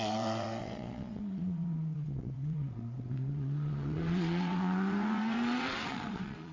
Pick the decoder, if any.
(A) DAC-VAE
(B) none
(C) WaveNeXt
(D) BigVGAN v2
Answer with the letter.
C